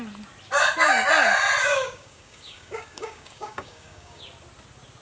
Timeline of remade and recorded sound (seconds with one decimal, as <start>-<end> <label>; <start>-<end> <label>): 0.0-1.6 recorded; 1.6-4.2 remade; 4.2-5.0 recorded